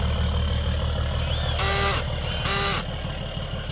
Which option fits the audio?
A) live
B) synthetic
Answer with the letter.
A